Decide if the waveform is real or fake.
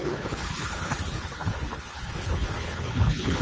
fake